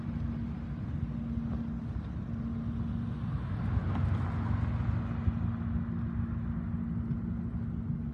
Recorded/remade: recorded